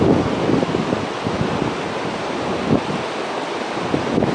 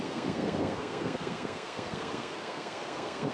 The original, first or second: first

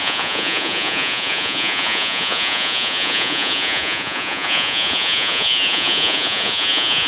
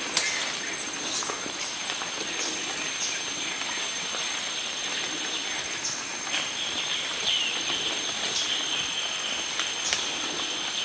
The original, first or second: second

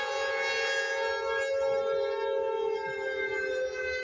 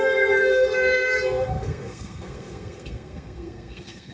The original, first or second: first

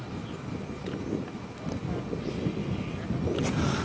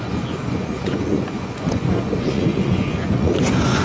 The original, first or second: first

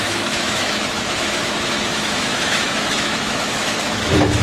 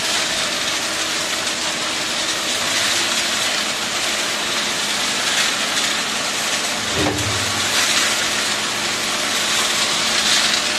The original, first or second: second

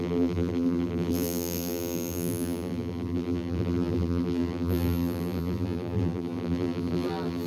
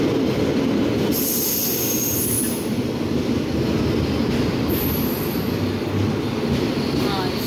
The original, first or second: second